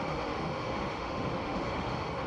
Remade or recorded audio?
remade